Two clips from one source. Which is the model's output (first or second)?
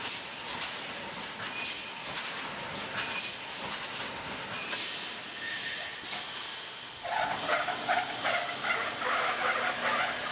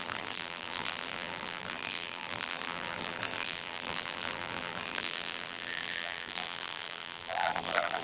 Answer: second